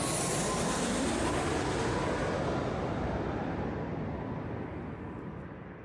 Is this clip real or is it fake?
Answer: real